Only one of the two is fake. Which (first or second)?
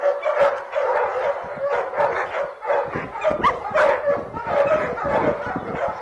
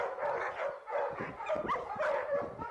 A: second